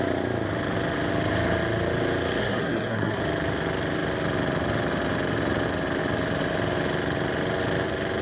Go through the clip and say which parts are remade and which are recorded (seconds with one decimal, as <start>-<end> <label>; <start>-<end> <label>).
0.0-2.4 recorded; 2.4-3.2 remade; 3.2-8.2 recorded